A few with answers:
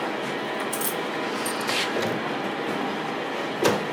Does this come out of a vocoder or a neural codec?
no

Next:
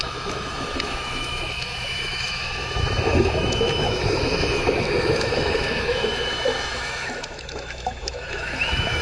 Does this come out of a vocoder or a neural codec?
yes